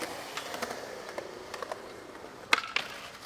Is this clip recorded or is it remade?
recorded